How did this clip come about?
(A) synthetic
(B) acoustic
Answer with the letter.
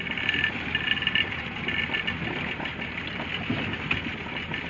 B